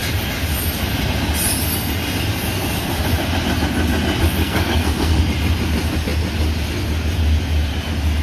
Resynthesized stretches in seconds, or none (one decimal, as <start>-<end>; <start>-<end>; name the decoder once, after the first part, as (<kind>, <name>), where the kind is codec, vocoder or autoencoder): 4.4-5.2 (codec, SNAC)

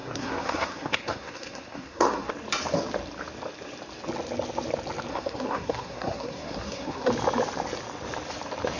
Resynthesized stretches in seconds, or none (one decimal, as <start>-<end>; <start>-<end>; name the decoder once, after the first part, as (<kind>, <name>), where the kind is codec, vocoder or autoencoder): 0.0-2.3 (codec, SNAC); 5.1-7.1

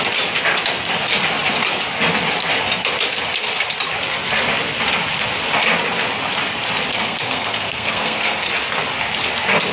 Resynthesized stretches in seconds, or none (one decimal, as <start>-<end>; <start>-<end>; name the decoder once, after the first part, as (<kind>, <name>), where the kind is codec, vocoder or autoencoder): 6.9-8.5 (codec, SNAC)

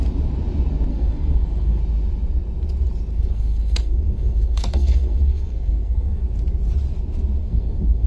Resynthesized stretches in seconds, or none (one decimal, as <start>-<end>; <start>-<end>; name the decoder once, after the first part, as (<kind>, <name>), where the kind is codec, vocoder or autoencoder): 0.9-1.8 (codec, SNAC); 3.1-6.2; 7.4-8.1

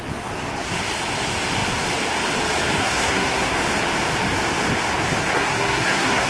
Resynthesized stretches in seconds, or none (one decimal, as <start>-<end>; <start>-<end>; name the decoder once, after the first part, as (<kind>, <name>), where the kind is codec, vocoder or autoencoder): 2.8-3.5 (codec, SNAC); 5.2-6.3

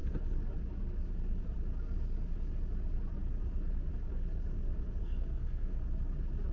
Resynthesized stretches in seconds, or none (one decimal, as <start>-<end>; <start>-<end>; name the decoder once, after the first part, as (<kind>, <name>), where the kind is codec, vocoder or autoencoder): 5.0-5.8 (codec, SNAC)

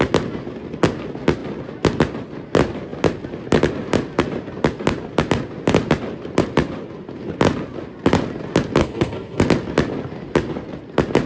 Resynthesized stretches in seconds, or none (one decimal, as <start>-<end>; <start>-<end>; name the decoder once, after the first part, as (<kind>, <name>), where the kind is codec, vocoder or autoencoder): 8.8-9.4 (codec, SNAC)